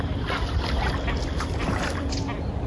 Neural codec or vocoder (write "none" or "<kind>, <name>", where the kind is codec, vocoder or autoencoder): none